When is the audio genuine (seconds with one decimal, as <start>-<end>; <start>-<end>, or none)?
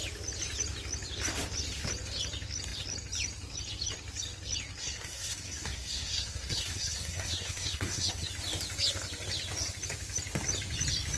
0.0-4.8; 8.3-11.2